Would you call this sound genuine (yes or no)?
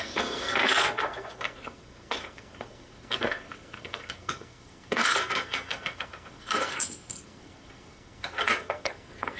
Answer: no